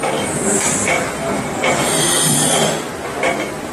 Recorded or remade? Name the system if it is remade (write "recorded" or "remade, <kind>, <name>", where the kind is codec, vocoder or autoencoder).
recorded